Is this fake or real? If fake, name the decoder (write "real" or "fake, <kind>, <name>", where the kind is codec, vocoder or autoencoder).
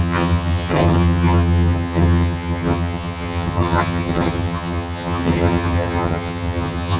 fake, vocoder, HiFi-GAN